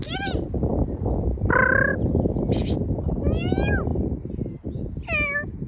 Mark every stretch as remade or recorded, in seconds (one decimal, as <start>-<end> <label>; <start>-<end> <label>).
0.0-5.7 recorded